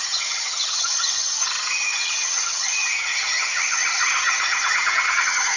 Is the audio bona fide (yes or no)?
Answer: no